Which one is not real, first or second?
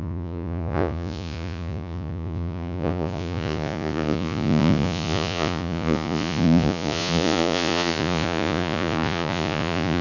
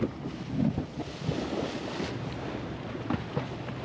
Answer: first